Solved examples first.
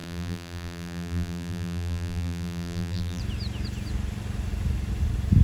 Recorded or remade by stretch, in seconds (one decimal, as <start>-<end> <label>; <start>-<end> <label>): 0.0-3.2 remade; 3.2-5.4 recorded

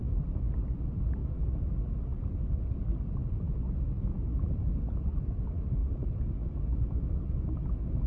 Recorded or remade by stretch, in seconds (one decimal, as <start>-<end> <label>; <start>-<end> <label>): 0.0-8.1 recorded

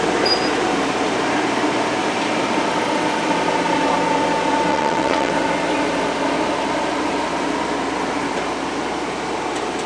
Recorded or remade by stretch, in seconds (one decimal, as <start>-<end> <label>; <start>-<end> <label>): 0.0-4.7 recorded; 4.7-5.3 remade; 5.3-9.9 recorded